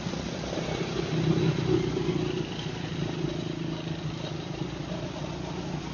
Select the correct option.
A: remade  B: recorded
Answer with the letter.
B